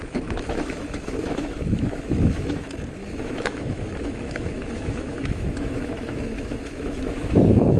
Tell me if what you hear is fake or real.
fake